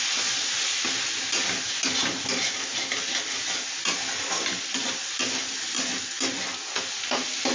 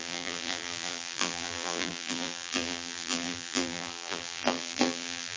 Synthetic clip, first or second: second